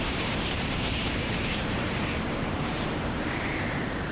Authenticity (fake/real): fake